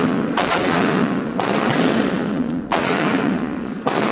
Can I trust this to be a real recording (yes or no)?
no